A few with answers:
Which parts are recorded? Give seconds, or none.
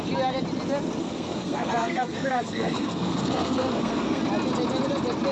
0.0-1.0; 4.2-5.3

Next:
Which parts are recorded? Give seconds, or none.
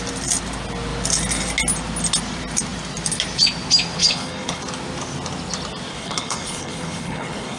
0.0-4.0; 4.6-5.9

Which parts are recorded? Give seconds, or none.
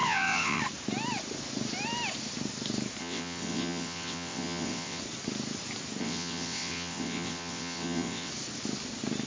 0.6-3.0; 5.0-6.0; 8.3-9.3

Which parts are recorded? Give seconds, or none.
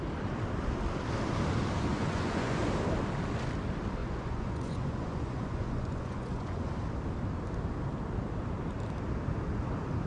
0.0-1.9; 2.6-4.0; 6.7-10.1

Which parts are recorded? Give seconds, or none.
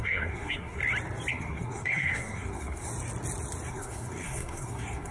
0.8-1.3; 2.9-3.7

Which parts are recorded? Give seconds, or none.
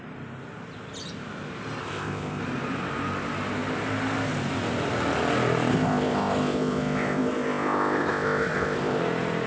0.0-1.8; 2.4-5.7; 9.0-9.5